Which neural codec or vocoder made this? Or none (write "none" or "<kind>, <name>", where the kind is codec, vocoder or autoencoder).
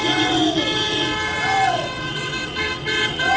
vocoder, WaveNeXt